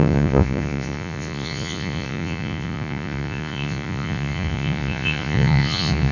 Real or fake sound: fake